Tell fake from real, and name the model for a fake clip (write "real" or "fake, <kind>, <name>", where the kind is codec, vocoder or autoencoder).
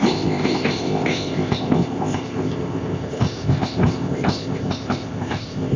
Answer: fake, codec, ZipCodec